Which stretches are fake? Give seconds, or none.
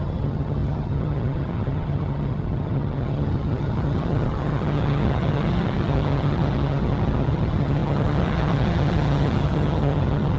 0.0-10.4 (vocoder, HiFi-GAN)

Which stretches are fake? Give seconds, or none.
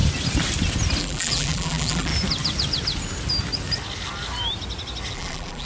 1.0-2.1 (vocoder, BigVGAN v2); 5.1-5.7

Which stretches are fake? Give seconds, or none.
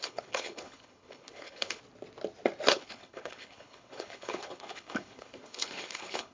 0.0-1.8 (codec, HILCodec); 2.7-6.3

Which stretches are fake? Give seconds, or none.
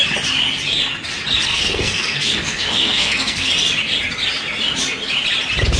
1.5-3.5 (codec, SNAC)